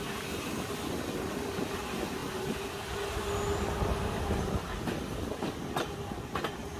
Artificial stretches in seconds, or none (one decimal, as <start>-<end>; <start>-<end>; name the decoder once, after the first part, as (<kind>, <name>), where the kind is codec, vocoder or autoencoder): none